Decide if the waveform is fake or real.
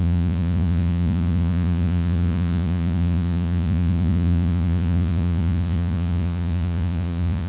fake